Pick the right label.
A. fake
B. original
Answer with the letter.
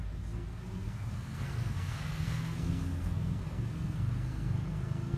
A